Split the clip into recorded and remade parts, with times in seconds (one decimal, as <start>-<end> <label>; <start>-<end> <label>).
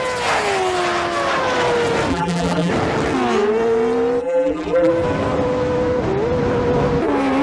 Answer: 0.0-2.1 recorded; 2.1-2.7 remade; 2.7-4.2 recorded; 4.2-4.9 remade; 4.9-7.4 recorded